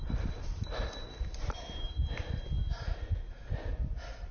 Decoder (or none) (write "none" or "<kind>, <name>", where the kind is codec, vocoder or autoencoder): none